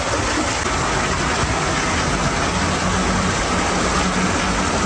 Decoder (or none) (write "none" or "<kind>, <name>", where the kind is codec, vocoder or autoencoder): none